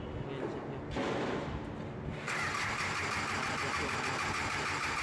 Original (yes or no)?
yes